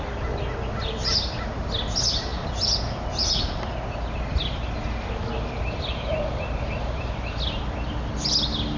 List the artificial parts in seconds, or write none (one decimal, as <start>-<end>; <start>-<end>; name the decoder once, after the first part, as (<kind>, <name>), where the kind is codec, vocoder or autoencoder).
none